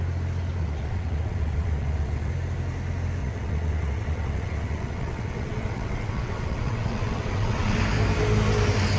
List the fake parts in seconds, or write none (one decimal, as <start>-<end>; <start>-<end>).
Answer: 0.6-2.3; 3.2-7.8